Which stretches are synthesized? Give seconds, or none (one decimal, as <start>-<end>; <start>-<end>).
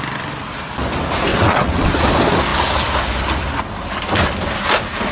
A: 1.3-1.9